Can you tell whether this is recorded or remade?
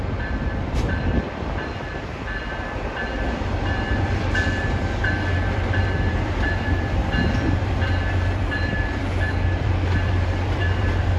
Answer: remade